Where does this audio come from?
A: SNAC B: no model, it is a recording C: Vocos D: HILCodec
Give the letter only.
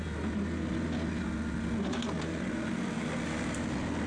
B